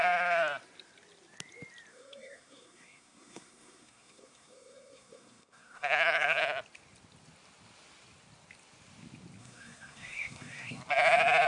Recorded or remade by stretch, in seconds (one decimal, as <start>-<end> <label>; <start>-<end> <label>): 0.0-1.9 recorded; 1.9-6.4 remade; 6.4-9.4 recorded; 9.4-10.8 remade; 10.8-11.5 recorded